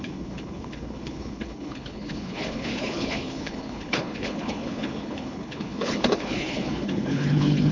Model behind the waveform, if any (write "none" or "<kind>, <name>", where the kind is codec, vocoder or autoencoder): codec, HILCodec